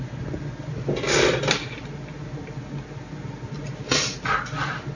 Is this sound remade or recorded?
recorded